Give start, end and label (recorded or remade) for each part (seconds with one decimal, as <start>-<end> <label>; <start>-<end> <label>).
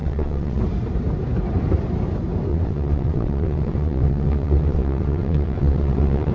0.0-0.6 remade; 0.6-2.5 recorded; 2.5-6.3 remade